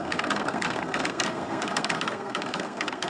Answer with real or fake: fake